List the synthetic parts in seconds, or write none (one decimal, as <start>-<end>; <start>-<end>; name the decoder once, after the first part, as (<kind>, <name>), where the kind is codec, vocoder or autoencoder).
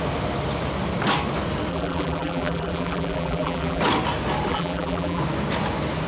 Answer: 1.7-3.8 (vocoder, BigVGAN v2); 4.5-5.2